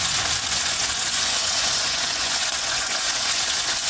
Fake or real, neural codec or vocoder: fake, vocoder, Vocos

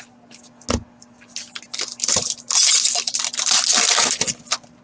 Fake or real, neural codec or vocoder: real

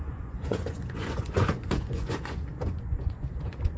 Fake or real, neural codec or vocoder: fake, vocoder, Vocos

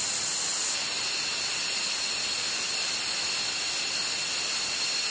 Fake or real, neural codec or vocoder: real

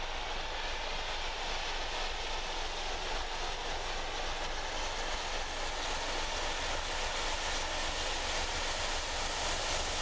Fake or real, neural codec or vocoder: real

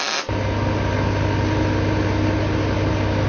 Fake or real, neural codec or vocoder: real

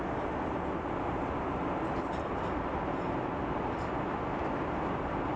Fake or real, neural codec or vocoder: real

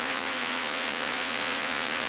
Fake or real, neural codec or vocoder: fake, vocoder, Vocos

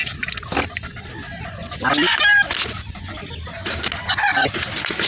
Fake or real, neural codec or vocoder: real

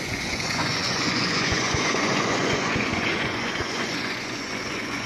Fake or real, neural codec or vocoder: fake, vocoder, Vocos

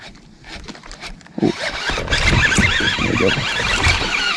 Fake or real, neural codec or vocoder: real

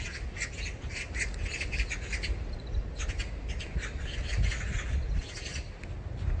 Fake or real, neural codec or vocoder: real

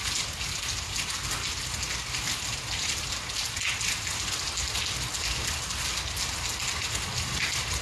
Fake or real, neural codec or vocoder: real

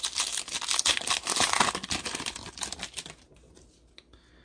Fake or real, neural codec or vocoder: real